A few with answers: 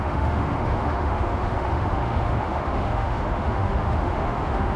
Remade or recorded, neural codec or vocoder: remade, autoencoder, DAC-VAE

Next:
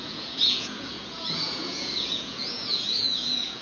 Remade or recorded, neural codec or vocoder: remade, vocoder, Vocos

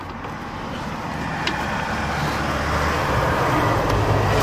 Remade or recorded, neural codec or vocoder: recorded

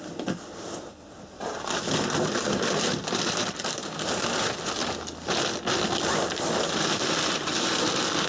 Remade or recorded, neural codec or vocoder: recorded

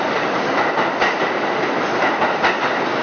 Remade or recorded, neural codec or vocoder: recorded